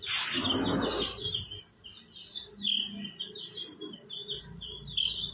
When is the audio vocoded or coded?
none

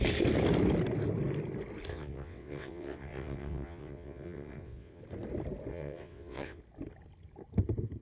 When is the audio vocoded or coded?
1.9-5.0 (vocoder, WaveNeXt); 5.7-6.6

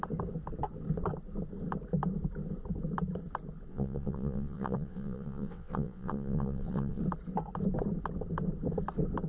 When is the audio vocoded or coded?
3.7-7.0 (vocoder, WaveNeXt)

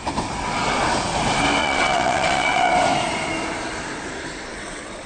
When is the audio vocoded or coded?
1.6-2.7 (vocoder, WaveNeXt); 4.5-5.1

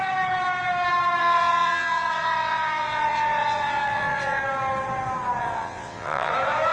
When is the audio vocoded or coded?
1.2-4.4 (vocoder, WaveNeXt); 5.4-6.3